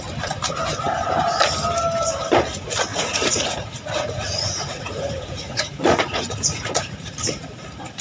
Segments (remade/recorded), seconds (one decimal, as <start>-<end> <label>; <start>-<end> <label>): 0.0-2.9 recorded; 2.9-7.1 remade; 7.1-8.0 recorded